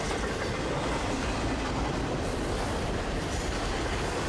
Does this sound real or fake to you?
fake